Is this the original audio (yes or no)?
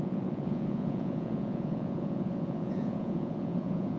no